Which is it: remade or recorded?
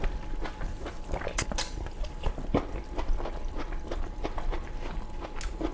recorded